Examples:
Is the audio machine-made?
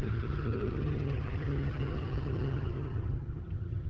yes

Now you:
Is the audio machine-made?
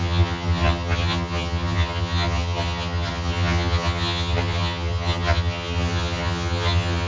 yes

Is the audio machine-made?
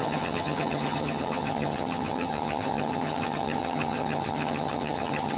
yes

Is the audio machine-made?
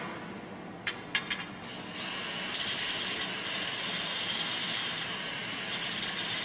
no